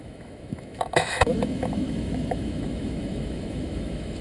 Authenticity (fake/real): fake